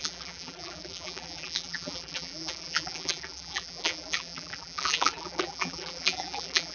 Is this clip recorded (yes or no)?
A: no